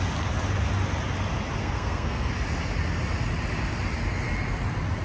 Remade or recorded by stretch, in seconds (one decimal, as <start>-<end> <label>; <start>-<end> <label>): 0.0-1.6 recorded; 1.6-2.3 remade; 2.3-5.0 recorded